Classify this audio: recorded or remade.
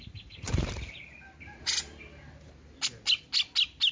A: recorded